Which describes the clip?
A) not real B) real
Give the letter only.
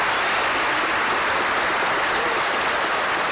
B